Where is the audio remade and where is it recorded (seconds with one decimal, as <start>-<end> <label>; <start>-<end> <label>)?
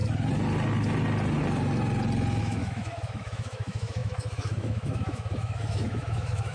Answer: 0.0-2.4 recorded; 2.4-6.5 remade